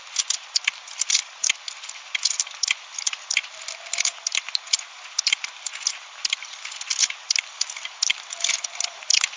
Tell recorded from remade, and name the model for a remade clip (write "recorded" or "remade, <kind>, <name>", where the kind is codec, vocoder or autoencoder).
recorded